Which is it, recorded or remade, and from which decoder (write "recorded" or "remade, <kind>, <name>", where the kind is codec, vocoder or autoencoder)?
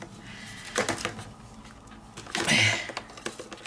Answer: recorded